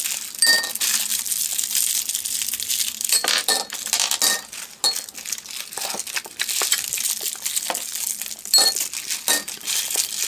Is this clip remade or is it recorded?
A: recorded